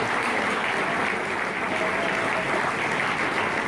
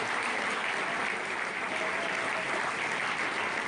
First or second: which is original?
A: first